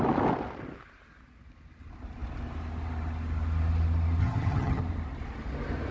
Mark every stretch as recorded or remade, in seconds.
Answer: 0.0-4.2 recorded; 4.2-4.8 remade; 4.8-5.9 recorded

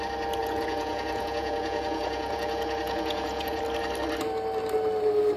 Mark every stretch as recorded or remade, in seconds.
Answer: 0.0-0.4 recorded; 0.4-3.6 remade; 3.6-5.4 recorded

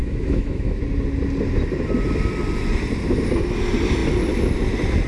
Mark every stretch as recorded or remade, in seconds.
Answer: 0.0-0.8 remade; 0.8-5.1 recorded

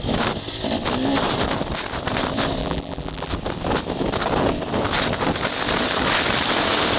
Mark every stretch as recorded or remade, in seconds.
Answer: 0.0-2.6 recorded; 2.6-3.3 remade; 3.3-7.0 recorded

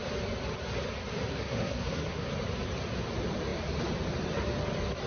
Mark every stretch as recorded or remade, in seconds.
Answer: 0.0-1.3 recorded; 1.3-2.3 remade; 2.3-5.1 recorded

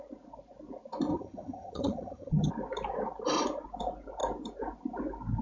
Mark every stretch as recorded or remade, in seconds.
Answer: 0.0-1.1 recorded; 1.1-2.5 remade; 2.5-5.4 recorded

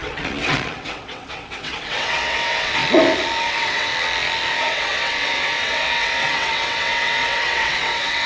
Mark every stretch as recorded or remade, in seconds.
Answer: 0.0-2.8 remade; 2.8-3.4 recorded; 3.4-3.9 remade; 3.9-4.5 recorded; 4.5-8.3 remade

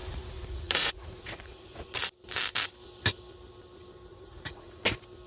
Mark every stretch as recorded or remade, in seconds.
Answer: 0.0-1.9 remade; 1.9-4.1 recorded; 4.1-4.8 remade; 4.8-5.3 recorded